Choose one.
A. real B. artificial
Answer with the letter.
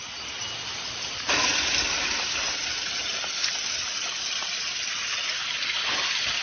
A